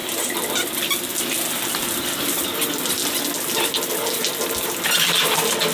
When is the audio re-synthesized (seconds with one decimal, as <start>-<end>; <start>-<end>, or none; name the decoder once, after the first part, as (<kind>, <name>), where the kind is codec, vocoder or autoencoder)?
none